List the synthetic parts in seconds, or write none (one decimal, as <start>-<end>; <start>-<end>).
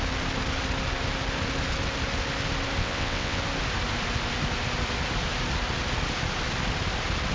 2.8-3.4